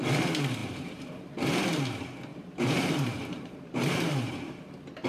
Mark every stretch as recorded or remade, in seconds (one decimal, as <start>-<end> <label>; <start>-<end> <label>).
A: 0.0-0.6 recorded; 0.6-1.2 remade; 1.2-2.3 recorded; 2.3-4.6 remade; 4.6-5.1 recorded